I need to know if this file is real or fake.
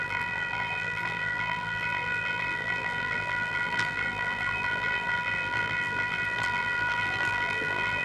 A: fake